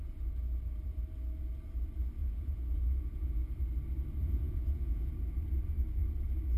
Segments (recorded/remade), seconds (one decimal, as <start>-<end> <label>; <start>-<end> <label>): 0.0-2.2 recorded; 2.2-3.5 remade; 3.5-4.2 recorded; 4.2-5.1 remade; 5.1-6.6 recorded